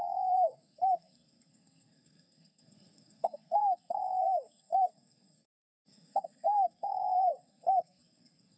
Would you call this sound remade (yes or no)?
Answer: yes